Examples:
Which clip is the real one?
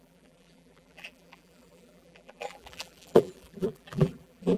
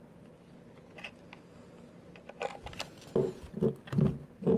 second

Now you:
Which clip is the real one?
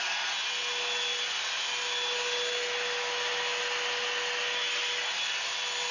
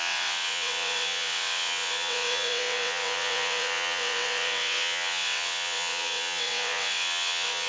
first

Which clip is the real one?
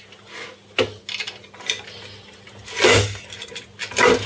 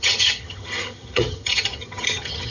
first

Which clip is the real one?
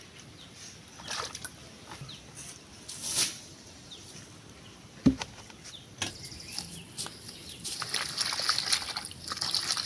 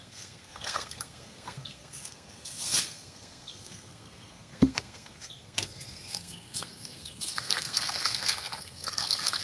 first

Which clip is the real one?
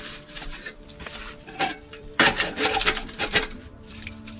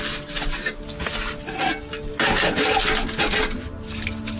second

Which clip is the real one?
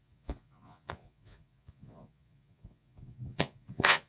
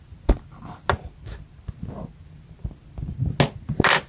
second